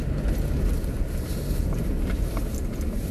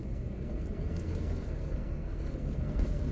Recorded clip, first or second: first